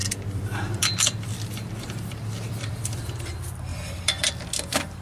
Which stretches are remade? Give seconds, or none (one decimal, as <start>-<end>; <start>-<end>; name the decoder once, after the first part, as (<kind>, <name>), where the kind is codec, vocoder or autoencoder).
0.0-3.0 (vocoder, BigVGAN v2); 3.7-4.3